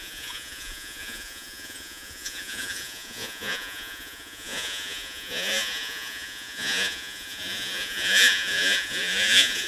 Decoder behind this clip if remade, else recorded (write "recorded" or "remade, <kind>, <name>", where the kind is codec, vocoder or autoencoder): remade, vocoder, Vocos